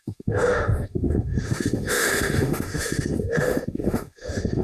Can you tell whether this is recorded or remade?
remade